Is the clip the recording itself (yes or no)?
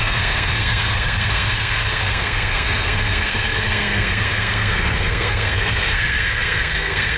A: no